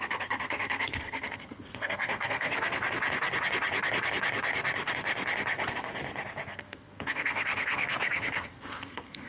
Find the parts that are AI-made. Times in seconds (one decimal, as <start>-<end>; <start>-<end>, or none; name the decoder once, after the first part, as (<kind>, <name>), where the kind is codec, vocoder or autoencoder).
0.0-2.5 (codec, SNAC); 6.5-9.3